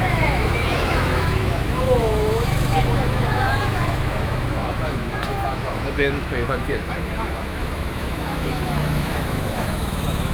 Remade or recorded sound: remade